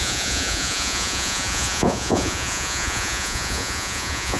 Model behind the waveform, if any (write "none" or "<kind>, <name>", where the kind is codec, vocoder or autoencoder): vocoder, Vocos